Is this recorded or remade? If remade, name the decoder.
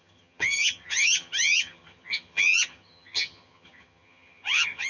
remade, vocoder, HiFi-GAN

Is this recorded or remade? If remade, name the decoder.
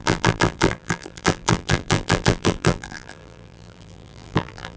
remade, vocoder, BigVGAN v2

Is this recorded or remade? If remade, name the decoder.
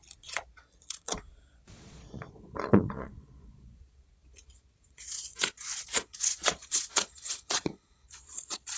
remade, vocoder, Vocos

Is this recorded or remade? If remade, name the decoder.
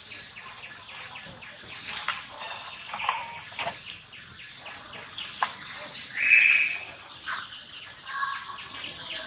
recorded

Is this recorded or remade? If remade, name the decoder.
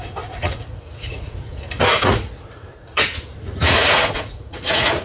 remade, vocoder, Vocos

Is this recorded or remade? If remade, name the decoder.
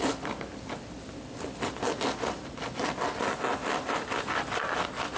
recorded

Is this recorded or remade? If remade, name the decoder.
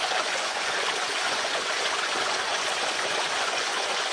remade, vocoder, Vocos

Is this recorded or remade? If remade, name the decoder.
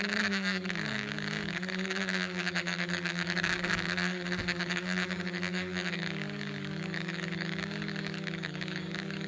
remade, codec, DAC